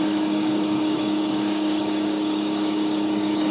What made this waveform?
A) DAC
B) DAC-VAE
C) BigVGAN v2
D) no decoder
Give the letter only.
A